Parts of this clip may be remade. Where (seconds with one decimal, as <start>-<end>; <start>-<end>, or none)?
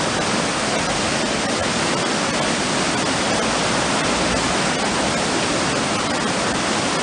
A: none